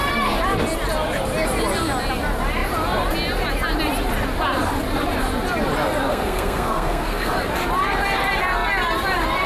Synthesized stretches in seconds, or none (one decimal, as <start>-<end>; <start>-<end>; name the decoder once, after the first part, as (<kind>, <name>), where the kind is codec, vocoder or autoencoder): 6.1-7.3 (codec, SNAC)